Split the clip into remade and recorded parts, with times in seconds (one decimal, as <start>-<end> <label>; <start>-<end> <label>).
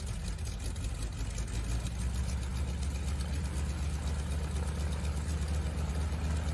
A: 0.0-6.5 recorded